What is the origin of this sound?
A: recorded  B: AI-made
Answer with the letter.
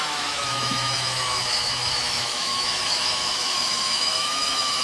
B